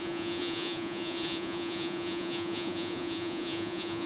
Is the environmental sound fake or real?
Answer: fake